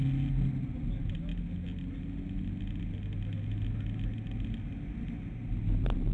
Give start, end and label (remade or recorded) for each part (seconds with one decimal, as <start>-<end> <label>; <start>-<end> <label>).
0.0-6.1 recorded